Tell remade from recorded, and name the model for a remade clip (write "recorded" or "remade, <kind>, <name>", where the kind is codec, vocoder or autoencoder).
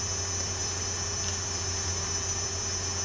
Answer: remade, vocoder, BigVGAN v2